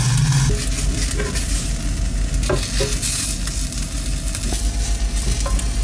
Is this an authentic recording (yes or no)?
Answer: yes